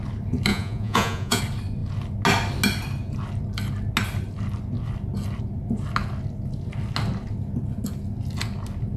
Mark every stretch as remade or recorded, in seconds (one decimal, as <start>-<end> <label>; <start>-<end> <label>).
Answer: 0.0-0.5 recorded; 0.5-1.4 remade; 1.4-9.0 recorded